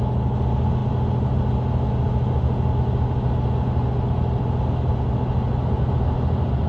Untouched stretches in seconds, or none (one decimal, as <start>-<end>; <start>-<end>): 0.0-6.7

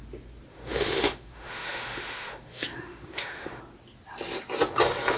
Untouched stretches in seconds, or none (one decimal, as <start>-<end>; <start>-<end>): 0.0-0.5; 3.6-5.2

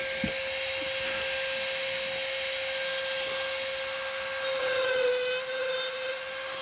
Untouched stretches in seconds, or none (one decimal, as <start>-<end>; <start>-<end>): 0.0-4.6; 5.1-6.6

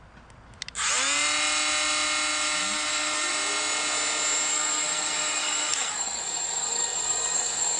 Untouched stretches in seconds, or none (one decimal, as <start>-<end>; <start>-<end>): 0.0-2.6; 3.3-4.5

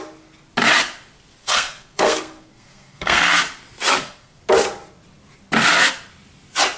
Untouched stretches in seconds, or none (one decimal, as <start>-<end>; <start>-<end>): 0.0-1.4; 3.4-3.9; 4.4-6.8

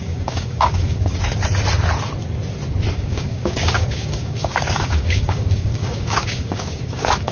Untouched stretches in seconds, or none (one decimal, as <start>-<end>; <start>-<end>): 1.1-2.9

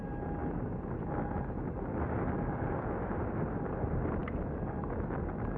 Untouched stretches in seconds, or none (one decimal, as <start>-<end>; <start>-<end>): 0.0-5.6